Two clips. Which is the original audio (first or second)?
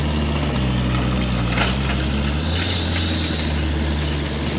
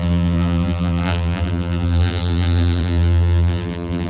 first